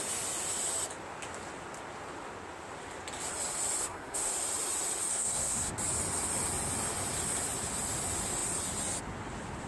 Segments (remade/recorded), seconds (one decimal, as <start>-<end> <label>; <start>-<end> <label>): 0.0-3.8 recorded; 3.8-4.3 remade; 4.3-5.1 recorded; 5.1-5.7 remade; 5.7-9.7 recorded